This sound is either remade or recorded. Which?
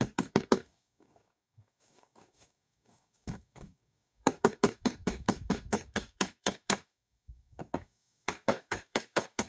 remade